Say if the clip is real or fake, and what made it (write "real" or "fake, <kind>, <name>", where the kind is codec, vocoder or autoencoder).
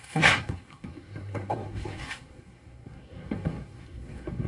fake, codec, SNAC